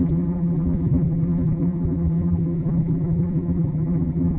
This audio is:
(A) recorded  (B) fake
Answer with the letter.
B